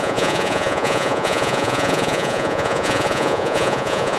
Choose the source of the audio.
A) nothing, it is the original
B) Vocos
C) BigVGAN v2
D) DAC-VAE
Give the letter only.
B